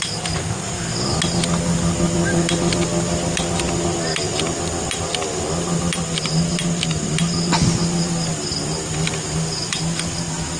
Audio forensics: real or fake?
real